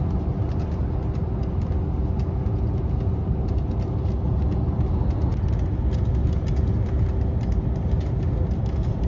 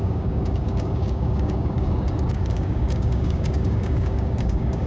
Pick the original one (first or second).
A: first